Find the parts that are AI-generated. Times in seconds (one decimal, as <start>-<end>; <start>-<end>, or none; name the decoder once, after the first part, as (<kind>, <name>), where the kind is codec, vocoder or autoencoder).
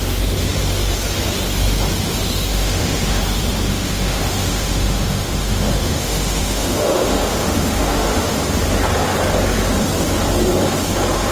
2.5-3.2 (autoencoder, DAC-VAE); 3.7-8.4